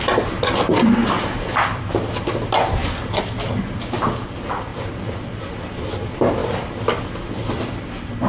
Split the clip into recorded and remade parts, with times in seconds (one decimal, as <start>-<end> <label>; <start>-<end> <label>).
0.0-8.3 recorded